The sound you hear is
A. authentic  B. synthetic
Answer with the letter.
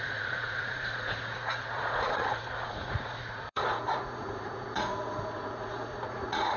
B